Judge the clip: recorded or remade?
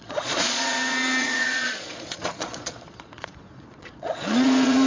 remade